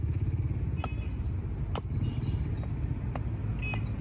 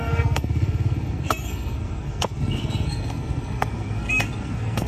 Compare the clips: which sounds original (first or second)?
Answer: first